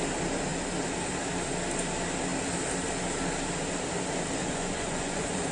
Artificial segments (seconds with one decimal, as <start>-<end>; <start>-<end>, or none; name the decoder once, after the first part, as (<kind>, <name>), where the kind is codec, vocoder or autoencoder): 4.4-5.5 (vocoder, Vocos)